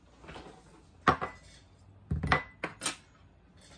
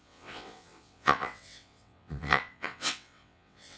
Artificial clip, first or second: second